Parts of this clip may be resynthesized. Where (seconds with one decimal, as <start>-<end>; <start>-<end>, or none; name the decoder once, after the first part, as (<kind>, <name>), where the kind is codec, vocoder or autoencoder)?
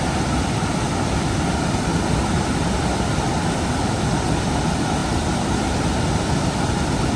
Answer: none